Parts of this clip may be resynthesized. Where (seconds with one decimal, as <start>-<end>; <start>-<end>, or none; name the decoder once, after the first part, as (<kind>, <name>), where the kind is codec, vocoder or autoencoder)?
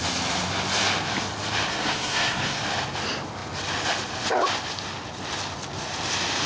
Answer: 1.7-2.6 (codec, SNAC)